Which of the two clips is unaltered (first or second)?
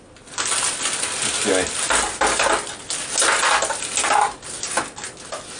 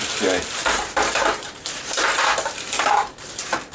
first